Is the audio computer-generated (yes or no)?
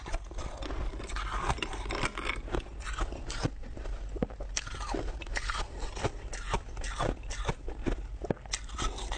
no